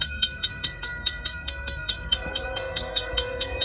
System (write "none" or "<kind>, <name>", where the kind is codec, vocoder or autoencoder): codec, SNAC